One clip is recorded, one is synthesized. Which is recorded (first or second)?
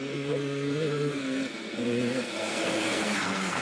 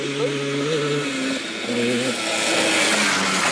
second